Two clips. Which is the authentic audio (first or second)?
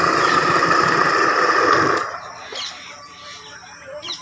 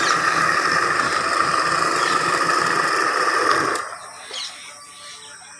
second